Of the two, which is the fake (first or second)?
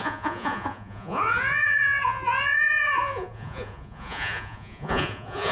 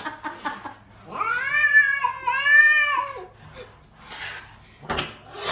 first